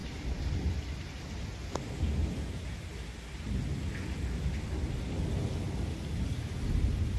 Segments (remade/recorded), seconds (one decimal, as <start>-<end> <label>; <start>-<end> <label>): 0.0-7.2 recorded